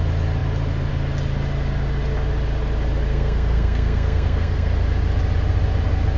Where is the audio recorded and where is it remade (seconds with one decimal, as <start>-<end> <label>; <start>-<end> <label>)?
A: 0.0-3.1 recorded; 3.1-4.7 remade; 4.7-6.2 recorded